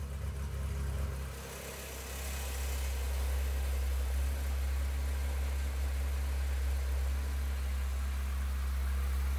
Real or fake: real